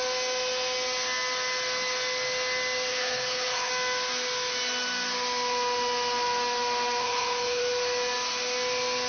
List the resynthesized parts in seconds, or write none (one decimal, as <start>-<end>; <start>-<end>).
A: 2.9-3.7; 7.0-7.6